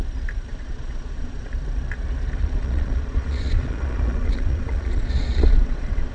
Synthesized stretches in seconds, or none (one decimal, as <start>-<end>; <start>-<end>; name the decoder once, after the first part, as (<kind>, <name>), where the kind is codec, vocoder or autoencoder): 0.5-1.5 (vocoder, Vocos); 2.4-6.1